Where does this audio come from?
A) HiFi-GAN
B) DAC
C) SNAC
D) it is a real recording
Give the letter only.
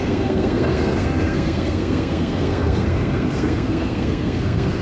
C